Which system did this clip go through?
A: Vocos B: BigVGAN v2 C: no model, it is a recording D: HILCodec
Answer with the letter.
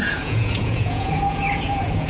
A